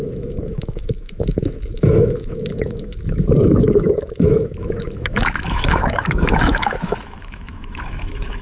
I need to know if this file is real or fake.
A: fake